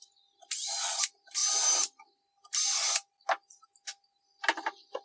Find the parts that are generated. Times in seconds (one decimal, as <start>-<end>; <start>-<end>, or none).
none